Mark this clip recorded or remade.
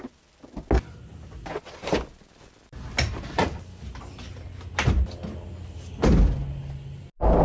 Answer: recorded